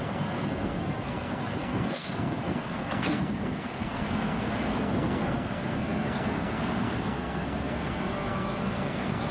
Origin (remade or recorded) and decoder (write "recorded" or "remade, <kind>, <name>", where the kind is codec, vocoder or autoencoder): remade, codec, SNAC